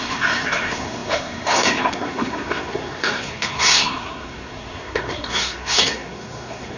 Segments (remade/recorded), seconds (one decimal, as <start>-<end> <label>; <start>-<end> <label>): 0.0-6.8 remade